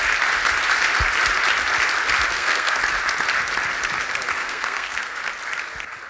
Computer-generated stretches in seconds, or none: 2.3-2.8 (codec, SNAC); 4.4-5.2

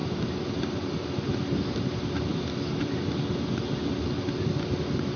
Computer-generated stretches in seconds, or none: none

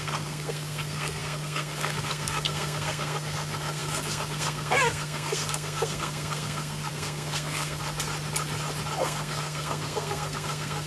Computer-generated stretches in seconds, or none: 0.0-7.8 (codec, SNAC); 9.0-10.9